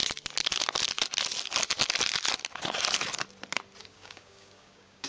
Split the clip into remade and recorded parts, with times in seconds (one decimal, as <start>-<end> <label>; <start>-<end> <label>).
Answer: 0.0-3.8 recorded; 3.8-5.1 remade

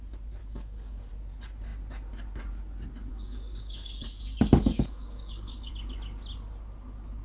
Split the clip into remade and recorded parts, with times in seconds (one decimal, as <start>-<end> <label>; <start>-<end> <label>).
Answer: 0.0-0.4 recorded; 0.4-1.1 remade; 1.1-3.1 recorded; 3.1-5.7 remade; 5.7-7.2 recorded

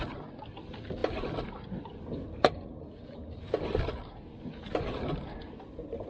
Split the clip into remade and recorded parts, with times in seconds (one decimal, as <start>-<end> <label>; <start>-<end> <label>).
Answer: 0.0-6.1 recorded

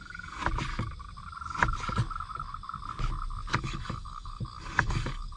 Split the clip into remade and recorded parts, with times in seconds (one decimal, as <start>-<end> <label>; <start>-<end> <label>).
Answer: 0.0-0.4 remade; 0.4-3.6 recorded; 3.6-5.4 remade

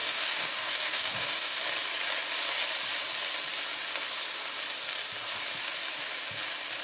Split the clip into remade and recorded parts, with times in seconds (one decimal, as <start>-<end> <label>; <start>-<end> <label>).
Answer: 0.0-1.6 remade; 1.6-6.8 recorded

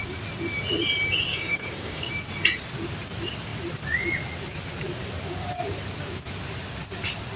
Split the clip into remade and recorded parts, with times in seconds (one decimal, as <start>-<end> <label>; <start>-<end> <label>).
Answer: 0.0-1.3 recorded; 1.3-2.1 remade; 2.1-7.4 recorded

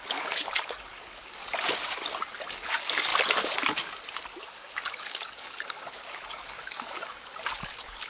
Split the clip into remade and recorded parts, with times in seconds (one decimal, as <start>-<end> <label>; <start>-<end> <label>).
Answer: 0.0-1.4 remade; 1.4-2.5 recorded; 2.5-3.1 remade; 3.1-4.4 recorded; 4.4-8.1 remade